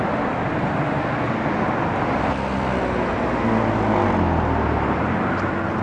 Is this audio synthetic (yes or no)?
no